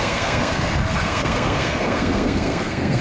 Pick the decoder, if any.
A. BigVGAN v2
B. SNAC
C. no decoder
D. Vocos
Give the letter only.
B